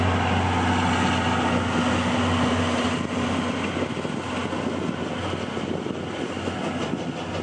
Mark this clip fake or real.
real